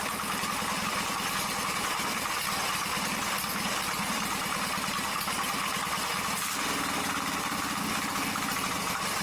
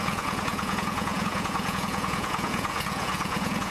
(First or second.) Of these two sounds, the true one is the first